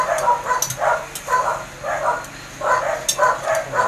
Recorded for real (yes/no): yes